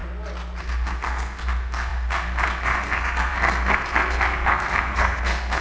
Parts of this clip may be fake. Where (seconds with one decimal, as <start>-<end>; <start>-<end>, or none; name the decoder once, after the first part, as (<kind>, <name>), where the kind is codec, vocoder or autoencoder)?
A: 0.6-5.6 (codec, SNAC)